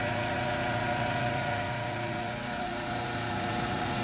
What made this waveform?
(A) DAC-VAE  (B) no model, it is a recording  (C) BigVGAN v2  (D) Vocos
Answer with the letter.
D